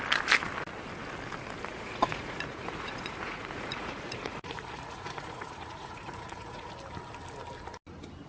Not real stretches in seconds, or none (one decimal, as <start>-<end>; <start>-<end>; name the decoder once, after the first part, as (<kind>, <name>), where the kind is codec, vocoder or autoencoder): 1.7-6.7 (vocoder, Vocos)